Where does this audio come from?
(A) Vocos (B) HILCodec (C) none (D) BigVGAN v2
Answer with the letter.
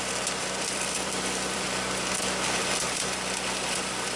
D